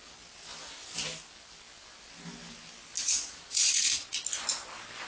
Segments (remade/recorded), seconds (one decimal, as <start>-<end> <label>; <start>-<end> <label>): 0.0-3.0 recorded; 3.0-4.2 remade; 4.2-5.1 recorded